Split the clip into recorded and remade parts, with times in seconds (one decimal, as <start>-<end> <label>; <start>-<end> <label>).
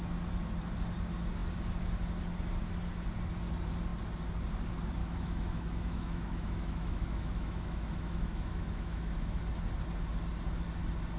0.0-5.0 recorded; 5.0-9.4 remade; 9.4-11.2 recorded